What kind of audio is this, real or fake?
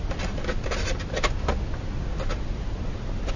real